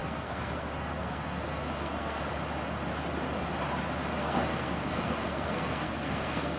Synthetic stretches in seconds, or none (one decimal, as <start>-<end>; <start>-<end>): 0.0-2.2; 4.2-6.6